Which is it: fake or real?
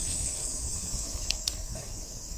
fake